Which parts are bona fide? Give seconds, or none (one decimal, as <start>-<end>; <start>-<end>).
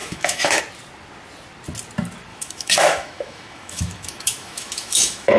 0.6-2.3